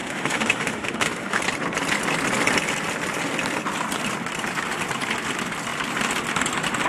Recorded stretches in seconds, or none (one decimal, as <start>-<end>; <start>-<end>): 1.4-6.9